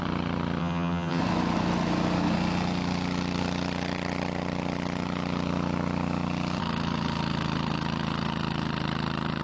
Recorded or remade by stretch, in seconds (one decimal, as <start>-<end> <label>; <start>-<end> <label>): 0.0-0.6 recorded; 0.6-1.2 remade; 1.2-9.4 recorded